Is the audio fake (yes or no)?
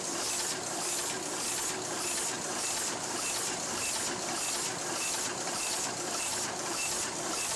no